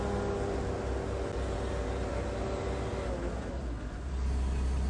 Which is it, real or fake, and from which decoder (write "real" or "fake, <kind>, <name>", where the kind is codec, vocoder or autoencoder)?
real